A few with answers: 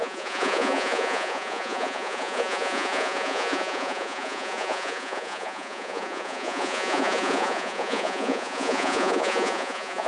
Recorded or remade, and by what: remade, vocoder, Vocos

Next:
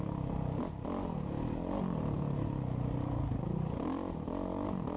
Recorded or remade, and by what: recorded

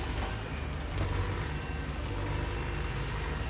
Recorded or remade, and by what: recorded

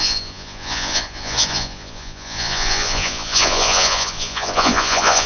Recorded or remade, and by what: remade, vocoder, Vocos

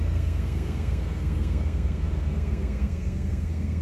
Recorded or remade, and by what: remade, codec, SNAC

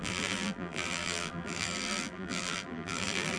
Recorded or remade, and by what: remade, vocoder, BigVGAN v2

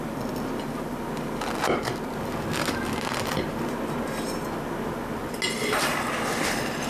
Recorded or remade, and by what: recorded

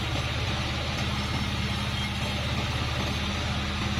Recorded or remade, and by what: recorded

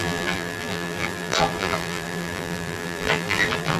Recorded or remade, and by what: remade, vocoder, BigVGAN v2